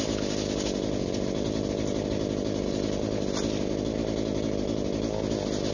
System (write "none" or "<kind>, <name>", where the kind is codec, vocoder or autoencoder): none